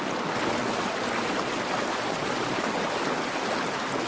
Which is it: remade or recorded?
recorded